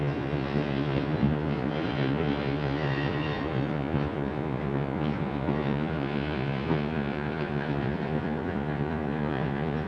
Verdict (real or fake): fake